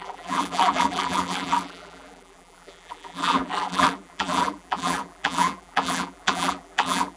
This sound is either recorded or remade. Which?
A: remade